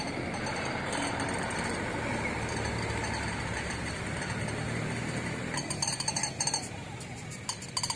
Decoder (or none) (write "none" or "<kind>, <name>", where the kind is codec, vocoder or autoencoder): none